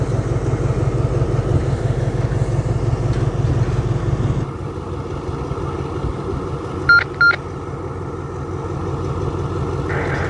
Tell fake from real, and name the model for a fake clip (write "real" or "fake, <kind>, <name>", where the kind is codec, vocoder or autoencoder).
real